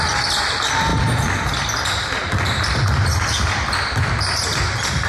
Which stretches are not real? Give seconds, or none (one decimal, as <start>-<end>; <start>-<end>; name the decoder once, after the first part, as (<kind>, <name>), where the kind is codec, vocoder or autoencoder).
0.0-5.1 (vocoder, BigVGAN v2)